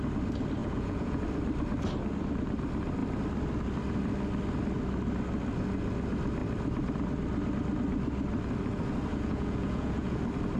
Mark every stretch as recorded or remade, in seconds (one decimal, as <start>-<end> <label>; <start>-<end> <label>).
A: 0.0-0.6 recorded; 0.6-1.2 remade; 1.2-9.1 recorded; 9.1-10.2 remade; 10.2-10.6 recorded